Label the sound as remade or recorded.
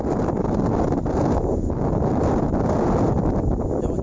recorded